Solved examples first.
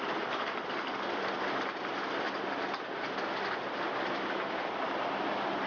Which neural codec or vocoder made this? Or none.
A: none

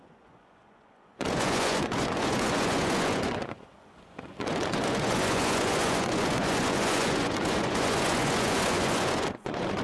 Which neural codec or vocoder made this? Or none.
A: vocoder, Vocos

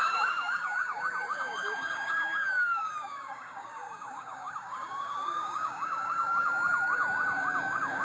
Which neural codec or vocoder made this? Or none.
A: codec, DAC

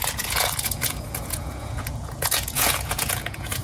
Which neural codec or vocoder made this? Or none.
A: vocoder, Vocos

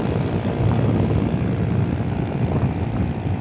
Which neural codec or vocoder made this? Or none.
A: none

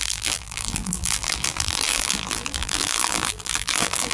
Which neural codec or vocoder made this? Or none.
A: vocoder, BigVGAN v2